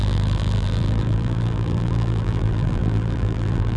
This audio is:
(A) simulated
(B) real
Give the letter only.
A